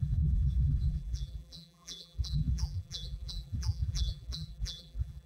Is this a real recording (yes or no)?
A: no